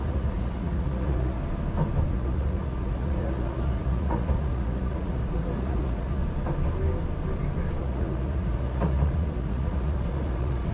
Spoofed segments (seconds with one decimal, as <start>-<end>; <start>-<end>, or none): 0.0-1.4; 2.1-6.2; 7.8-10.7